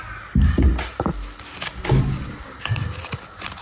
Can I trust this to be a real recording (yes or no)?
yes